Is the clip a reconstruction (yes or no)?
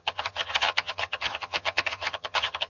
yes